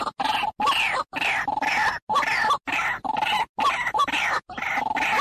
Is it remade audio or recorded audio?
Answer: recorded